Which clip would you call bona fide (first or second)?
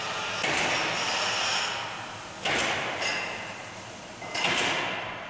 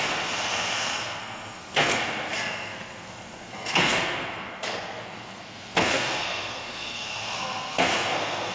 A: first